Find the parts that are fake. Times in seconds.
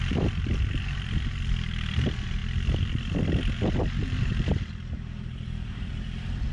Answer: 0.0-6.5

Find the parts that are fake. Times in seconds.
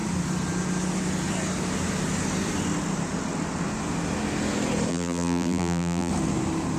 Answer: 4.9-6.1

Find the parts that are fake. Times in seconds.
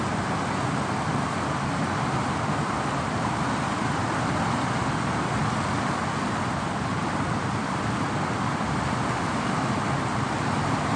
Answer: 0.0-5.4; 6.2-11.0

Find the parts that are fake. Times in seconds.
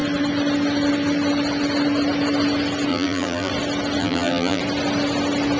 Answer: 2.9-3.5; 4.0-4.6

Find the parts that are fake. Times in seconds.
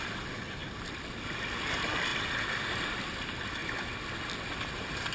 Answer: 2.1-2.8; 3.6-4.2